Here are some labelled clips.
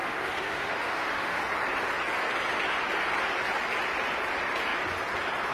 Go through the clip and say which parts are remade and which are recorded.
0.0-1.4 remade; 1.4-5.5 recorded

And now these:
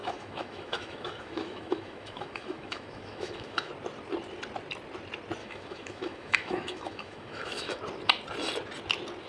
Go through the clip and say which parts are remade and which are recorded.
0.0-3.7 remade; 3.7-5.4 recorded; 5.4-7.8 remade; 7.8-9.3 recorded

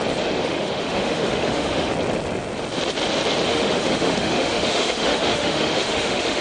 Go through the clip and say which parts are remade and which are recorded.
0.0-0.4 recorded; 0.4-1.9 remade; 1.9-3.5 recorded; 3.5-6.4 remade

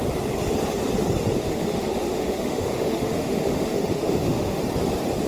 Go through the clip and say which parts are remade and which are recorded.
0.0-1.4 recorded; 1.4-4.6 remade; 4.6-5.3 recorded

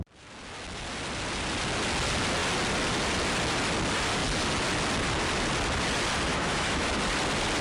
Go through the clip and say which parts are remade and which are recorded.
0.0-6.3 recorded; 6.3-6.9 remade; 6.9-7.6 recorded